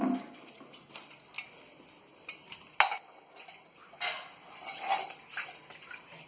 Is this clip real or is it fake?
real